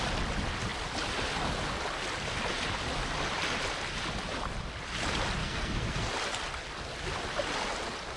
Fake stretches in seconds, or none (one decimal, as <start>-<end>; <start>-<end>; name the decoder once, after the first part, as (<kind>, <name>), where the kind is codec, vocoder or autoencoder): 5.4-6.1 (codec, SNAC)